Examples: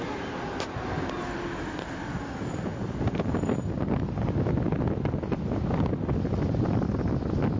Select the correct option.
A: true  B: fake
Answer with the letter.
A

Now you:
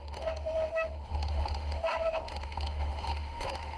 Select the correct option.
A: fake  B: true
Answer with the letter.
A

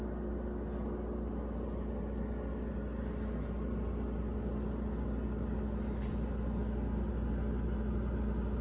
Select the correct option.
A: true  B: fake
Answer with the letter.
A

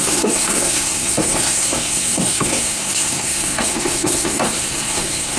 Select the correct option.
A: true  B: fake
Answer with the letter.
B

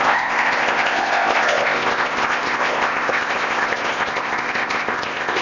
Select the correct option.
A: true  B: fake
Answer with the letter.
B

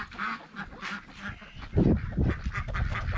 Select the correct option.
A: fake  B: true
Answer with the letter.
B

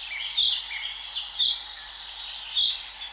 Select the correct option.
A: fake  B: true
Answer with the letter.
B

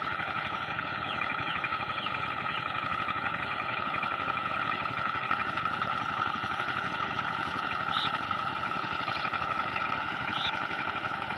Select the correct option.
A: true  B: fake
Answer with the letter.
B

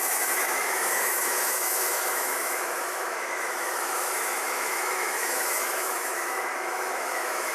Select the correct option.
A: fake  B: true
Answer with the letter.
A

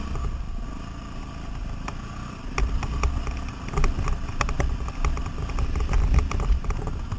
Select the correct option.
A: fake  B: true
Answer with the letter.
B